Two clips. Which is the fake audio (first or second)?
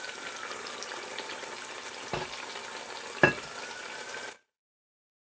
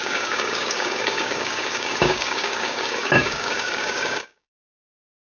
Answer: second